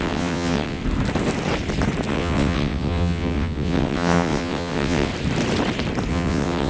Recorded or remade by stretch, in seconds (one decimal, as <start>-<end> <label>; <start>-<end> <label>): 0.0-0.8 remade; 0.8-2.1 recorded; 2.1-5.1 remade; 5.1-6.1 recorded; 6.1-6.7 remade